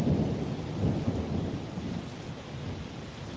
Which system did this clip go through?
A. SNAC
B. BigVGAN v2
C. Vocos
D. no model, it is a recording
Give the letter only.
D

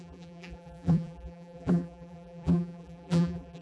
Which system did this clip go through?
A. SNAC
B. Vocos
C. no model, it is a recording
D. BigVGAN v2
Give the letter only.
D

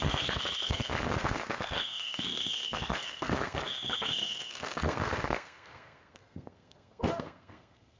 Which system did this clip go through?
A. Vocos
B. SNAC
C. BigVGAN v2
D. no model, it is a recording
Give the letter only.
B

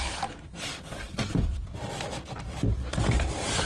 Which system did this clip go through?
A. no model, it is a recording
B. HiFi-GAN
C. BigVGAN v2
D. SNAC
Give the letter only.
C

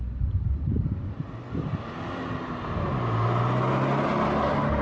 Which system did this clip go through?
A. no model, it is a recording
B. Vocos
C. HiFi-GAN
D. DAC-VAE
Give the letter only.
A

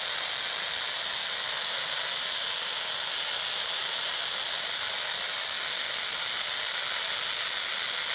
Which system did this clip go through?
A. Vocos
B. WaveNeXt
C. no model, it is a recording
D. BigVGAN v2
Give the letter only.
C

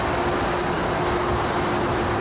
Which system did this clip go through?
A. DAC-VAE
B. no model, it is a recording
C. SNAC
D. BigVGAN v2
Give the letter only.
B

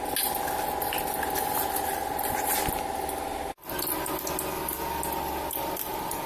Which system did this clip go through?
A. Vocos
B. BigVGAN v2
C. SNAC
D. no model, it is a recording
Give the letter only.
D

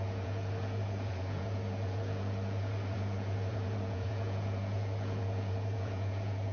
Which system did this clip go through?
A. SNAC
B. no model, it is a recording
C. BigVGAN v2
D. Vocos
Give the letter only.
D